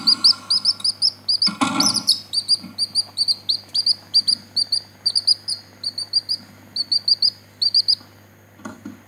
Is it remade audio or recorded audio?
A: recorded